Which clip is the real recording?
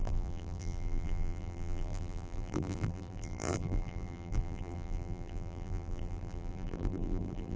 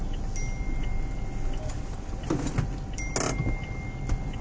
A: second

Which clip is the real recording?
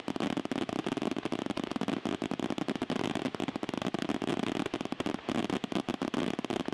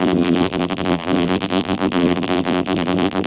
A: first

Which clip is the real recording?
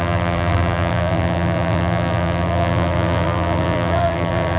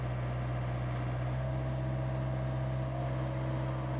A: second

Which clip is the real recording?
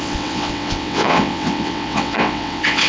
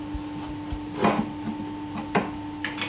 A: second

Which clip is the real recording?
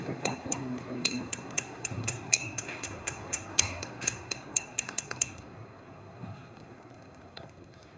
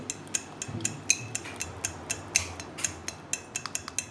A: second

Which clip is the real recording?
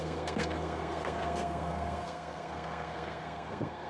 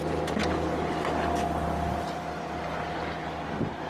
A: second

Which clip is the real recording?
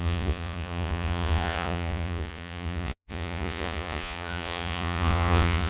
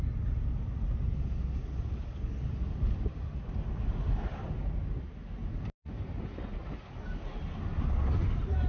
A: second